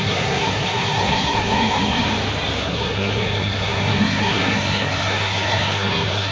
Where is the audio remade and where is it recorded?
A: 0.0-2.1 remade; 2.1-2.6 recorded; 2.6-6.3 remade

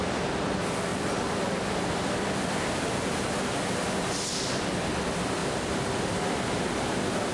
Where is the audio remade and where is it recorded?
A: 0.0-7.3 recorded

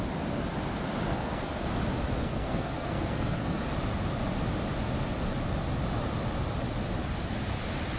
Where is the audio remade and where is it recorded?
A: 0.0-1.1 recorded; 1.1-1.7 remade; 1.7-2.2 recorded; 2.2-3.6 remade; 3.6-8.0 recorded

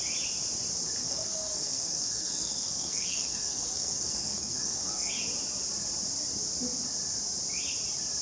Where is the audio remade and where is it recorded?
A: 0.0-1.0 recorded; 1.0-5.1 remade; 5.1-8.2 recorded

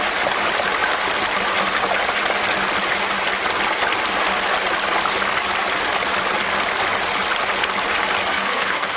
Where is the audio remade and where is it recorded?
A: 0.0-8.3 recorded; 8.3-9.0 remade

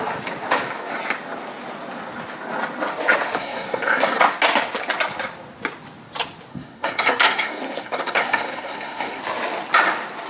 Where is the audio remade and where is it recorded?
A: 0.0-3.4 recorded; 3.4-4.2 remade; 4.2-6.5 recorded; 6.5-9.2 remade; 9.2-10.3 recorded

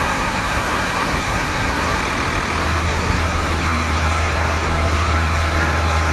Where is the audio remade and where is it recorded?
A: 0.0-2.0 remade; 2.0-2.6 recorded; 2.6-6.1 remade